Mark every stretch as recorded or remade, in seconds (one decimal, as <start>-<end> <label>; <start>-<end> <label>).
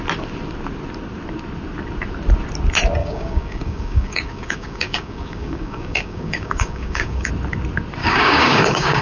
0.0-3.0 recorded; 3.0-7.3 remade; 7.3-8.0 recorded; 8.0-9.0 remade